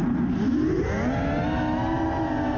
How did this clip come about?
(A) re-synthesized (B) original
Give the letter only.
B